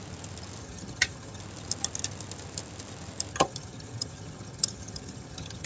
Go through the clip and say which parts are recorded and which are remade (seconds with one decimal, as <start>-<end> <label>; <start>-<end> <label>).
0.0-0.6 recorded; 0.6-1.4 remade; 1.4-3.3 recorded; 3.3-5.7 remade